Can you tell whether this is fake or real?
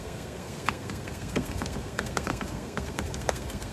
fake